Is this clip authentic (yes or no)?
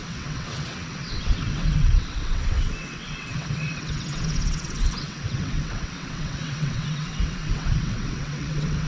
no